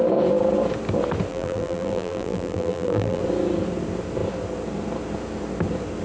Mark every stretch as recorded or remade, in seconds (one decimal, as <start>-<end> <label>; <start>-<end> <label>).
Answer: 0.0-1.3 recorded; 1.3-3.2 remade; 3.2-6.0 recorded